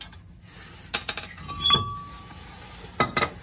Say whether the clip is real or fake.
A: real